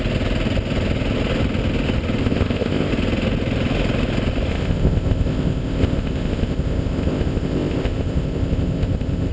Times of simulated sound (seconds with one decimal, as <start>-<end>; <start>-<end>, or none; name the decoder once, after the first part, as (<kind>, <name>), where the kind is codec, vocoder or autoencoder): 2.2-2.9 (codec, ZipCodec); 4.5-9.3